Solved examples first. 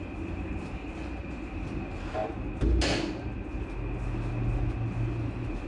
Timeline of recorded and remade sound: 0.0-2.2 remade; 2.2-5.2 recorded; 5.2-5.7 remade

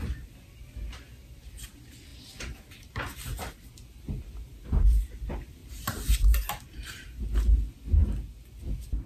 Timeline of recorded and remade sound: 0.0-5.6 recorded; 5.6-7.2 remade; 7.2-9.1 recorded

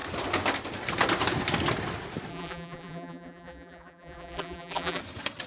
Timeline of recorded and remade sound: 0.0-2.3 recorded; 2.3-5.0 remade; 5.0-5.5 recorded

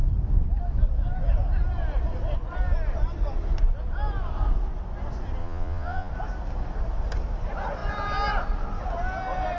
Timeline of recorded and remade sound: 0.0-5.4 recorded; 5.4-6.1 remade; 6.1-9.6 recorded